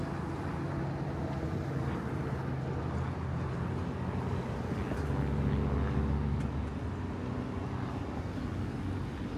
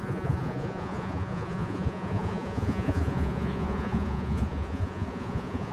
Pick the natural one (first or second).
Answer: first